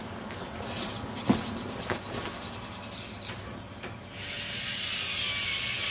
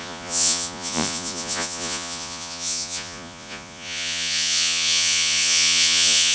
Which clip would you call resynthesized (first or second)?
second